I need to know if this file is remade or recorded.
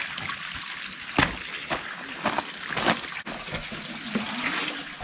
recorded